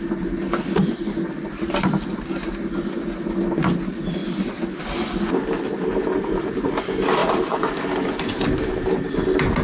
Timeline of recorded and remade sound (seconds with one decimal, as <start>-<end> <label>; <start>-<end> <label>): 0.0-7.2 recorded; 7.2-8.2 remade; 8.2-9.6 recorded